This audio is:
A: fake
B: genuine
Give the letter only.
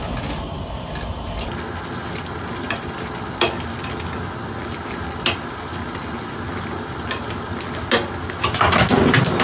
B